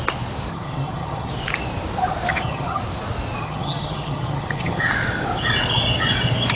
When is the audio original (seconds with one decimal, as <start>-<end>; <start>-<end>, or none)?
0.0-0.5; 1.3-2.3; 2.8-3.4; 4.9-6.6